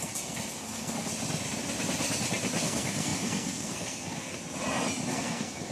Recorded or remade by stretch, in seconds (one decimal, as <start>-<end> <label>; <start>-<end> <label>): 0.0-1.1 remade; 1.1-2.6 recorded; 2.6-4.4 remade; 4.4-5.1 recorded; 5.1-5.7 remade